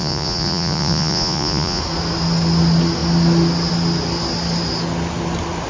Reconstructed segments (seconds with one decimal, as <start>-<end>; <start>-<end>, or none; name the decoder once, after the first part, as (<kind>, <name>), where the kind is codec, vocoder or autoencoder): 0.0-1.8 (vocoder, Vocos)